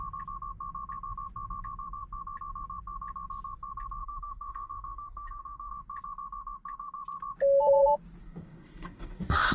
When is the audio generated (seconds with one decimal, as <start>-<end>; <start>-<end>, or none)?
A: 4.0-5.7; 8.2-9.5